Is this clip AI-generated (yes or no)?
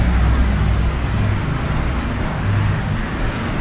no